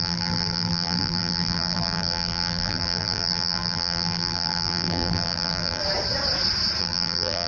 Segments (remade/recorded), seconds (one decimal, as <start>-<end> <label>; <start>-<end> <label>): 0.0-5.8 remade; 5.8-6.8 recorded; 6.8-7.5 remade